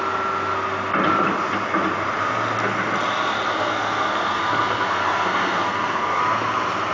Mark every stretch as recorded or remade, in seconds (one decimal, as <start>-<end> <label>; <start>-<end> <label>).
0.0-3.5 recorded; 3.5-6.2 remade; 6.2-6.9 recorded